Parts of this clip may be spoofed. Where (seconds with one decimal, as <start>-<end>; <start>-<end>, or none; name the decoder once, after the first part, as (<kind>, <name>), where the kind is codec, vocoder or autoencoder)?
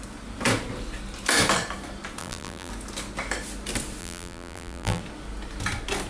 2.2-2.7 (vocoder, BigVGAN v2); 4.0-5.0